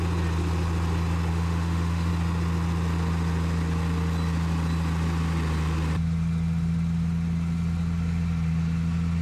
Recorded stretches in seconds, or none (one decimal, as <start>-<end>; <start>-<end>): 0.0-1.3; 2.1-9.2